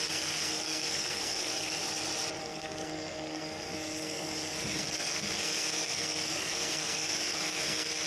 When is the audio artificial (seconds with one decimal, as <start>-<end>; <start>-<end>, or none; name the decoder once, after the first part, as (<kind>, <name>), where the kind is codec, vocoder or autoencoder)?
0.0-1.8 (codec, SNAC); 2.4-8.1